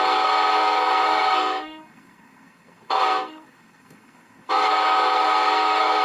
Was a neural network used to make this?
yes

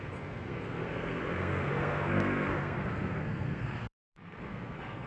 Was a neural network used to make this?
yes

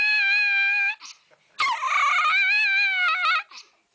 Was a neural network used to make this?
no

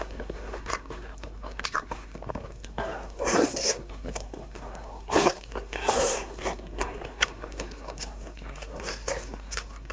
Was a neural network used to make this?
yes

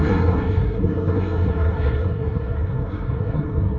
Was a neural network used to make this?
yes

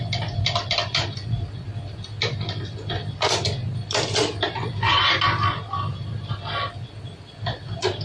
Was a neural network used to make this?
no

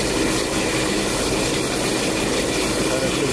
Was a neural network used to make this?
no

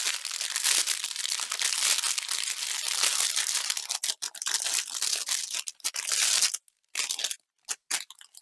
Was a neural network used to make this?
no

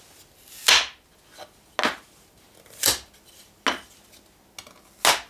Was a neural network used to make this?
no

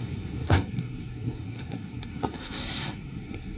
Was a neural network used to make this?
yes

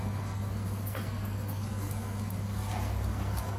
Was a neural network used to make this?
yes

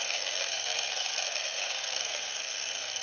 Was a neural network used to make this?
yes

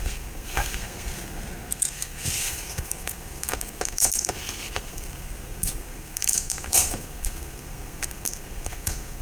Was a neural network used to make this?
yes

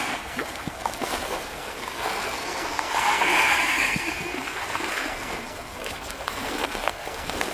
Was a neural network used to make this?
yes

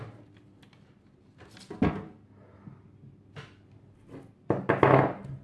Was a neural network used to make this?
no